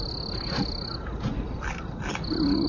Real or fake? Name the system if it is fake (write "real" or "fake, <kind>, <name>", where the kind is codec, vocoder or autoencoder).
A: real